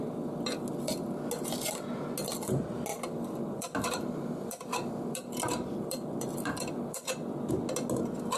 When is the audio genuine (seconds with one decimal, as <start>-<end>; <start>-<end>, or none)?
0.7-2.9; 7.5-8.4